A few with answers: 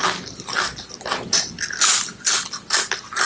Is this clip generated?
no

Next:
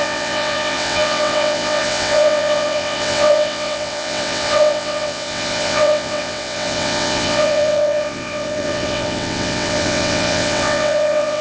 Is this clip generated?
yes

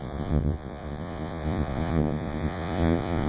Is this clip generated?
yes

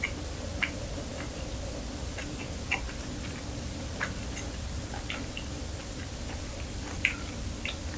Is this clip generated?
no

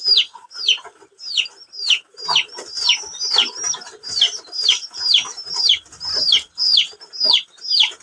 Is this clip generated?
no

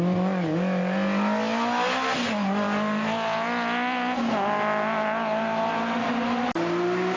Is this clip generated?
no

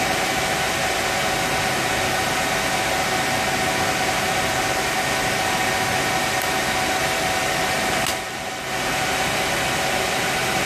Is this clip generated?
no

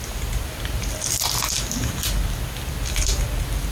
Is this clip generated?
no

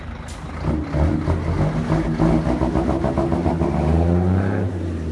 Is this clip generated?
no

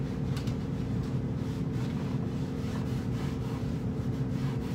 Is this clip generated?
yes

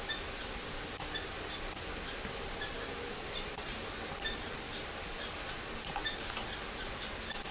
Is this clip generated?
no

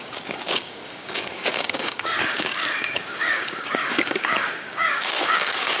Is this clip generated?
yes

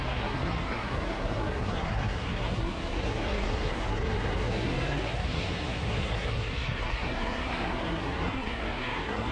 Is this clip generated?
yes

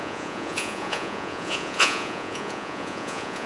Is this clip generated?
yes